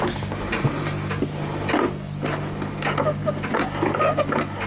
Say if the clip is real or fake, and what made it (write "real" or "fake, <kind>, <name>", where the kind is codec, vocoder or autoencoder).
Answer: real